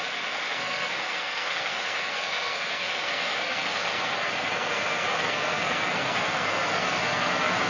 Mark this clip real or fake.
fake